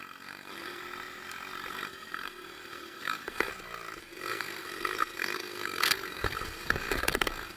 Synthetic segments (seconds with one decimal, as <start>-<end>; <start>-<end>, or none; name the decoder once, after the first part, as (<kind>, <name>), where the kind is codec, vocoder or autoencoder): 0.0-0.8 (codec, SNAC); 1.7-3.5; 4.0-7.6